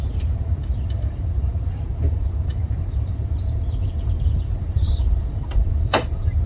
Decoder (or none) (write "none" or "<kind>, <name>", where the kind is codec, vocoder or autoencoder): vocoder, BigVGAN v2